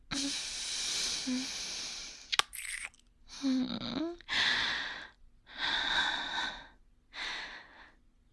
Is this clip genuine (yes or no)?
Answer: yes